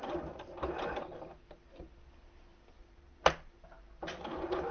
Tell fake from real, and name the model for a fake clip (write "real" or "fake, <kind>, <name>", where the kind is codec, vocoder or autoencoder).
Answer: real